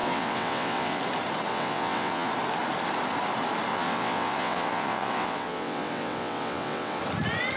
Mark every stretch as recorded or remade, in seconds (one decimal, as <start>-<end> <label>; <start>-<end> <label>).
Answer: 0.0-1.0 remade; 1.0-1.5 recorded; 1.5-2.3 remade; 2.3-3.7 recorded; 3.7-7.0 remade; 7.0-7.6 recorded